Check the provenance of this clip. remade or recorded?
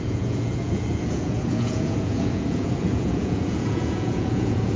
remade